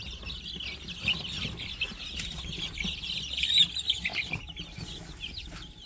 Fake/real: real